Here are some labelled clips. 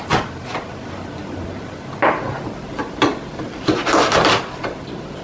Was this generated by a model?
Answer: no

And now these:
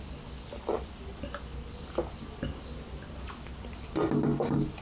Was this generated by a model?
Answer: no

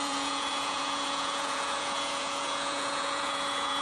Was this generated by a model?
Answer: yes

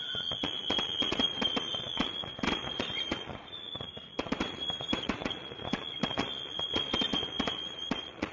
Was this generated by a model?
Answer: yes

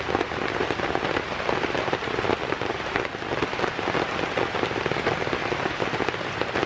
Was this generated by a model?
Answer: no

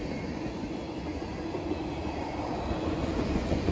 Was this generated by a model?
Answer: yes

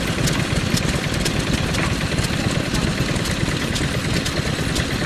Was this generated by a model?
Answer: no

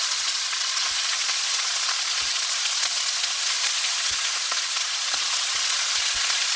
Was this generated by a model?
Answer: yes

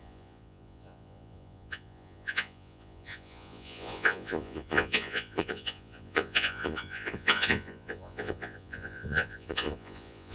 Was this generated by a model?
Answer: yes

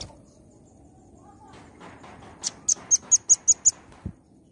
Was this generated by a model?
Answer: no